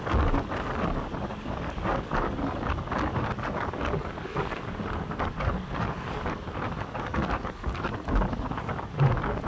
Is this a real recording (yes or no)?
no